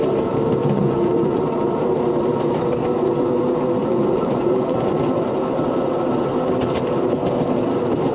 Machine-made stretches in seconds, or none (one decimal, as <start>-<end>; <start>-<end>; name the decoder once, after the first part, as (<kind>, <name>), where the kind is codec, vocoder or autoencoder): 0.6-1.4 (vocoder, Vocos); 3.8-5.0